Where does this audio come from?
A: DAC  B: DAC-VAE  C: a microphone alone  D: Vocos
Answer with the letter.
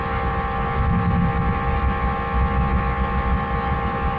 C